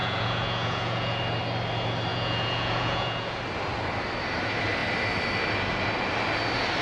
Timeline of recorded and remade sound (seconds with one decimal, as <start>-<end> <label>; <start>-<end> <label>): 0.0-1.2 remade; 1.2-2.1 recorded; 2.1-3.4 remade; 3.4-6.8 recorded